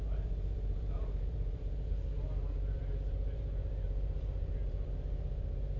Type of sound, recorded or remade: remade